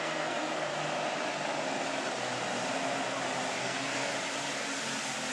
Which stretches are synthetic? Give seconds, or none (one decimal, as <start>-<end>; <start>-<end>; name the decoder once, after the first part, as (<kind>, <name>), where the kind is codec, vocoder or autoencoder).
0.0-0.7 (codec, SNAC); 3.6-4.1